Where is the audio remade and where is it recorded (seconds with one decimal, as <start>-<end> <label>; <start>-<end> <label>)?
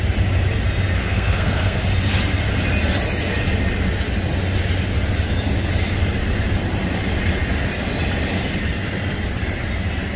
0.0-1.0 recorded; 1.0-1.8 remade; 1.8-10.2 recorded